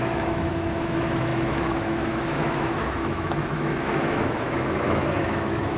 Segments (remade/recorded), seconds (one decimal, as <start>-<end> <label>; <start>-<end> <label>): 0.0-5.8 remade